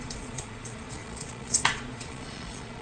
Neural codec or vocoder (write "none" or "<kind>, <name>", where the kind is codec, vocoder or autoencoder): vocoder, Vocos